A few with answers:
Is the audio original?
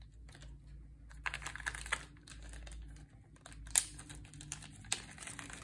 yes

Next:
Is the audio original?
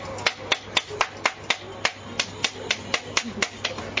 yes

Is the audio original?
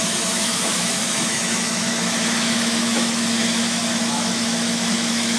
no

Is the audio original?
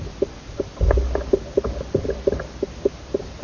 yes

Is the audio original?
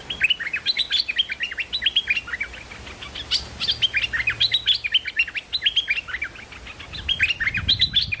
yes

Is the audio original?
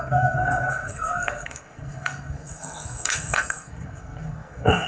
no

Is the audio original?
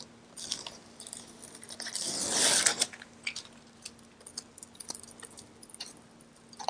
yes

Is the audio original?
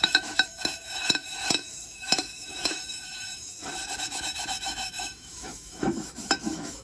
no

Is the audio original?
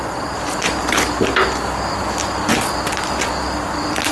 yes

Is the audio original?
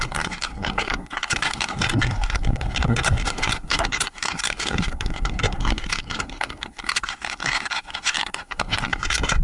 no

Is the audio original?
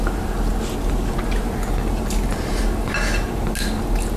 yes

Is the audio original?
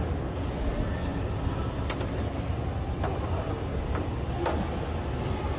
yes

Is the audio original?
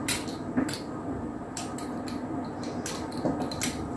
yes